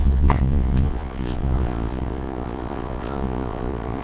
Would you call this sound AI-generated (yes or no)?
yes